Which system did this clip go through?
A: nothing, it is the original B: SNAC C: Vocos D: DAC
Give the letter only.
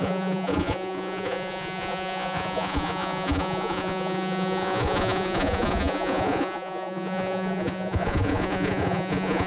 C